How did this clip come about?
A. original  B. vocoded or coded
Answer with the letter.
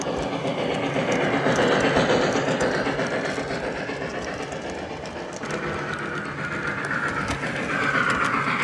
A